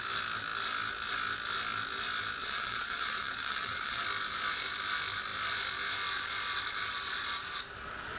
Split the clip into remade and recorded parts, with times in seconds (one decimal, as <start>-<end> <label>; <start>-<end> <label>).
0.0-2.4 recorded; 2.4-4.0 remade; 4.0-8.2 recorded